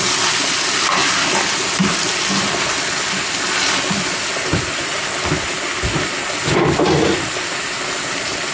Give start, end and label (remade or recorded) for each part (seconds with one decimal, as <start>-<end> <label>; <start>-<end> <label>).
0.0-8.5 recorded

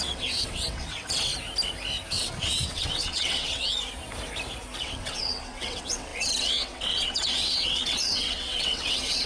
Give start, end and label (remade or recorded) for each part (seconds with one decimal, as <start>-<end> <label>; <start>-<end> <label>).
0.0-1.3 remade; 1.3-2.1 recorded; 2.1-3.7 remade; 3.7-4.8 recorded; 4.8-9.3 remade